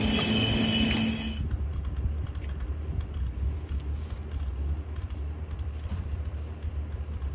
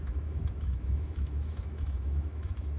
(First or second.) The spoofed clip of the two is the second